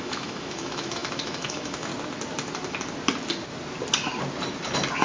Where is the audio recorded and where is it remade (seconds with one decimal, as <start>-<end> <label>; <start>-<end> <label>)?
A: 0.0-1.9 remade; 1.9-5.0 recorded

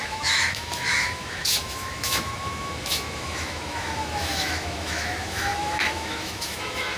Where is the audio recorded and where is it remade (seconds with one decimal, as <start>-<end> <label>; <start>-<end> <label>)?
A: 0.0-7.0 remade